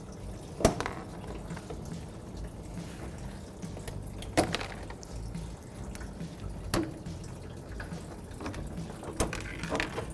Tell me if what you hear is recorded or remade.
recorded